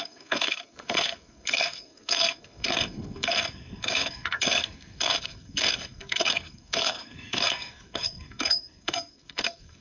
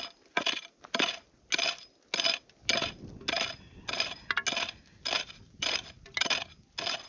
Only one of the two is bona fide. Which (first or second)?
second